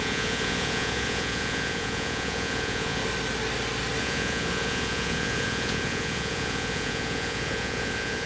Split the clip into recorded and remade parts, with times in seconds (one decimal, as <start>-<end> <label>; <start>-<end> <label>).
0.0-3.0 remade; 3.0-4.0 recorded; 4.0-8.3 remade